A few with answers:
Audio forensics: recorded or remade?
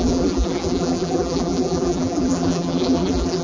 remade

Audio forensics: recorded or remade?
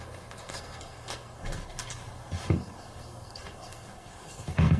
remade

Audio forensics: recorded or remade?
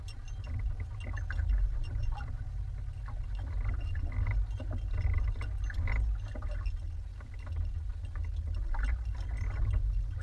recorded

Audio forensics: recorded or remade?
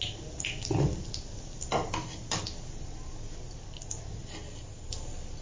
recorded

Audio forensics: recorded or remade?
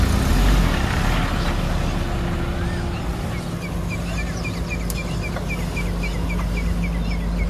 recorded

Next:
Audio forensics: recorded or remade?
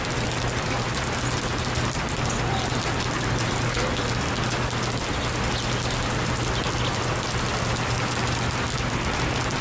recorded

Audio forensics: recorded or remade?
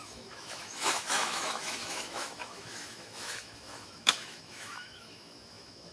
remade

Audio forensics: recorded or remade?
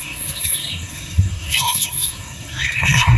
remade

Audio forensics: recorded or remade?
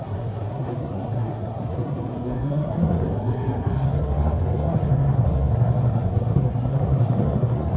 remade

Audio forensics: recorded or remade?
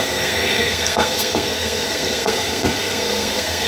remade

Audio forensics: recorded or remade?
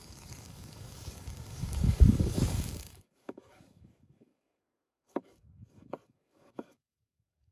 remade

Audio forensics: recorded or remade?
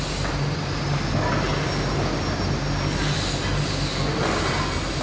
recorded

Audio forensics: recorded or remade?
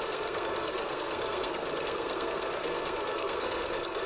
remade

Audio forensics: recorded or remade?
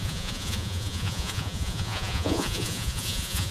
remade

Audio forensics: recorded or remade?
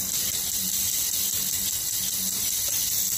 recorded